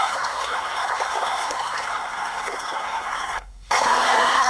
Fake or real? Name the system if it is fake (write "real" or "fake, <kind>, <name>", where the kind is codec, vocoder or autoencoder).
fake, codec, SNAC